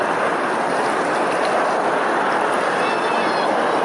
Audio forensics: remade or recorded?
recorded